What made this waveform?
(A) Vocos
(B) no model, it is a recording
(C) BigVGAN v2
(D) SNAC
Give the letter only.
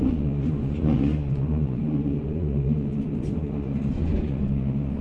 A